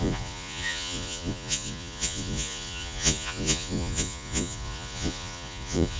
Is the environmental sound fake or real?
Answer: fake